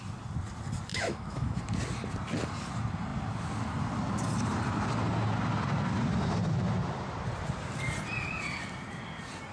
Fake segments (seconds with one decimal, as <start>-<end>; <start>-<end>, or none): 0.9-1.6